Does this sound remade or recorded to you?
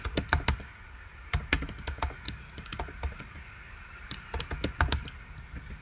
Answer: recorded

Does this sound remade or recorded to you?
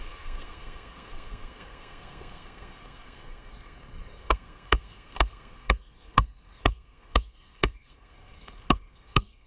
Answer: remade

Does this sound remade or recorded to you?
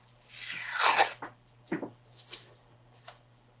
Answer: recorded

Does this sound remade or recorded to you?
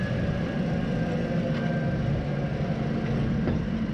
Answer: recorded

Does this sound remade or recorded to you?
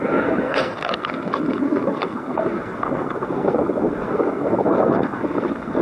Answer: remade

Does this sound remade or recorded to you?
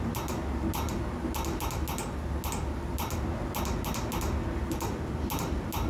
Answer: recorded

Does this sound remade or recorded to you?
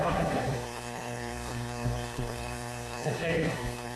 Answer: remade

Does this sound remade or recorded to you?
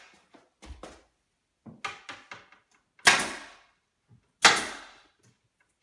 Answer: recorded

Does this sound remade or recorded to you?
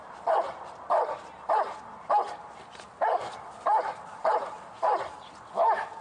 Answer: recorded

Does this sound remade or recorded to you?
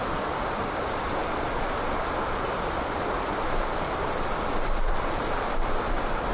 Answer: recorded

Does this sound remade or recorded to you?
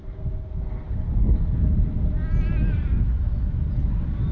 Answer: recorded